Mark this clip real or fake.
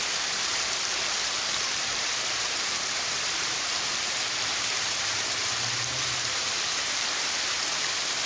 fake